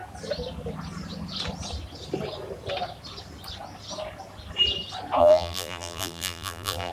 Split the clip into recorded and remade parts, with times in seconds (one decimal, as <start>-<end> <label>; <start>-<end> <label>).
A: 0.0-5.2 recorded; 5.2-6.9 remade